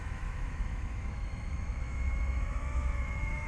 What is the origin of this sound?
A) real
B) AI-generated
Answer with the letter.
B